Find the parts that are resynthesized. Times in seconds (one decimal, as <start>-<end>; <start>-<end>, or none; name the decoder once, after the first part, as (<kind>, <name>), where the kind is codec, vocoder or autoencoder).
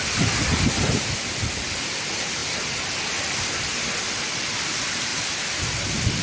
none